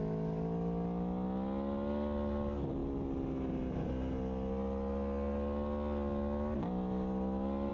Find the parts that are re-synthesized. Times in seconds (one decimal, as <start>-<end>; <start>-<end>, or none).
none